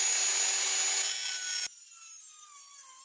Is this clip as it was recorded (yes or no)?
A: yes